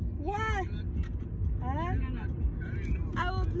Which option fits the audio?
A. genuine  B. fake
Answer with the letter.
A